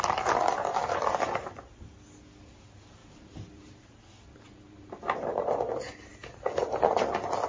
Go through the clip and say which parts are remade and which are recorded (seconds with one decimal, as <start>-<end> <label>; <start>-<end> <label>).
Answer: 0.0-0.7 recorded; 0.7-1.4 remade; 1.4-3.0 recorded; 3.0-5.6 remade; 5.6-7.5 recorded

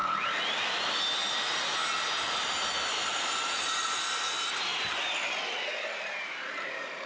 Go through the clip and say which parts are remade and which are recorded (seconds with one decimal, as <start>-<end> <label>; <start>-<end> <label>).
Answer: 0.0-3.1 recorded; 3.1-4.1 remade; 4.1-4.7 recorded; 4.7-5.3 remade; 5.3-7.1 recorded

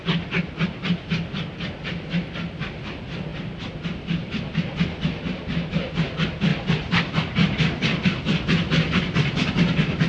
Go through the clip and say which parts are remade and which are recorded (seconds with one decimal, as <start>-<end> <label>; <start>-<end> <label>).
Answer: 0.0-3.3 recorded; 3.3-4.5 remade; 4.5-6.5 recorded; 6.5-9.5 remade; 9.5-10.1 recorded